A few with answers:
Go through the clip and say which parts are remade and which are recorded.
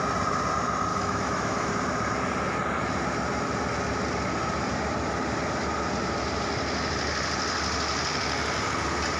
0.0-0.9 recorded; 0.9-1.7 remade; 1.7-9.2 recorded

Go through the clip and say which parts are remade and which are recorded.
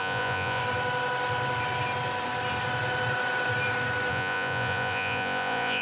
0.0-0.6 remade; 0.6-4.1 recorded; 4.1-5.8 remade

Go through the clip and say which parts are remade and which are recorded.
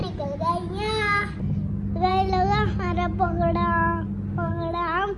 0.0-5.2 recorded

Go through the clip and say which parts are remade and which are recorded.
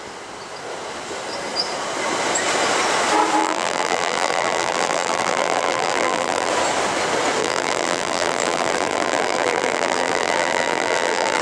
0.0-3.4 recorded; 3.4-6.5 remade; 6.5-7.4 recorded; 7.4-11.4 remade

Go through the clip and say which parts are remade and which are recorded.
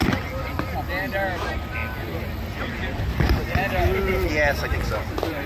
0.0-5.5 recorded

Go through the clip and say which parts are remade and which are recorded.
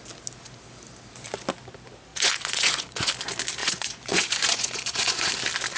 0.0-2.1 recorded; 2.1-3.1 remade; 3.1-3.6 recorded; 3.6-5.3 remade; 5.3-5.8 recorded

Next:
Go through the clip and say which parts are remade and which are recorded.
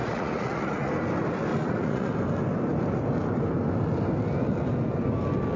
0.0-0.9 remade; 0.9-1.5 recorded; 1.5-2.1 remade; 2.1-5.6 recorded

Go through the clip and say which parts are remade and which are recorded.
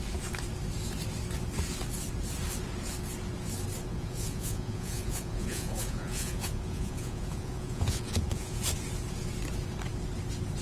0.0-3.9 recorded; 3.9-8.6 remade; 8.6-10.6 recorded